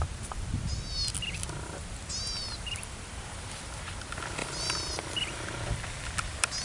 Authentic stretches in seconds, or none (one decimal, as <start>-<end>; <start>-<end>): 0.0-4.4; 4.9-6.6